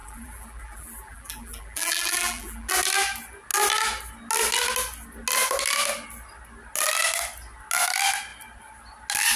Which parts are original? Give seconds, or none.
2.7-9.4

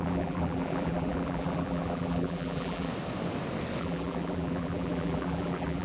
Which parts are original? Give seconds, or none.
2.9-3.8